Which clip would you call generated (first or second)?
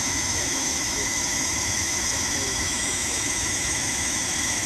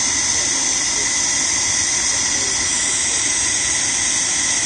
first